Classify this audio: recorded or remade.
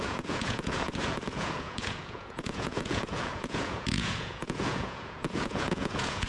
remade